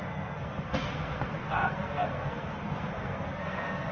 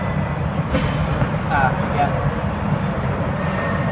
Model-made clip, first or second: first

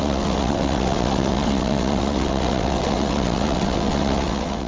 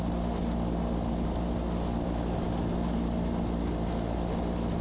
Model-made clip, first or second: first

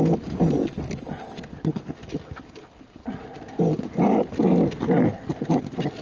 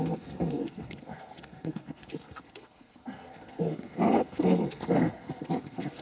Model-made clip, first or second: second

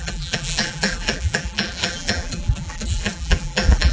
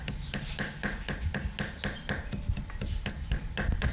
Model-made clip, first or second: first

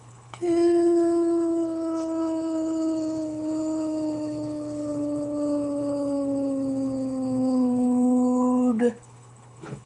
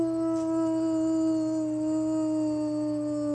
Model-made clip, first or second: first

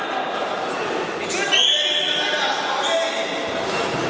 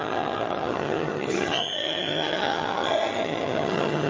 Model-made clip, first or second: second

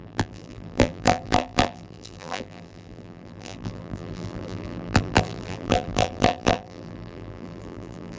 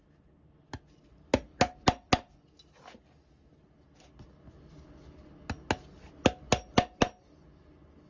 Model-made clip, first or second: first